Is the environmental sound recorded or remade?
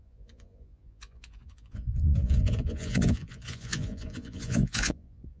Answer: remade